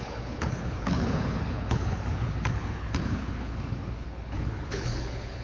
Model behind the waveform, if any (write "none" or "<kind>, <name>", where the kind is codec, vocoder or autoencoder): codec, HILCodec